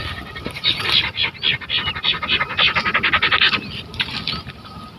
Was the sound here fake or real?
real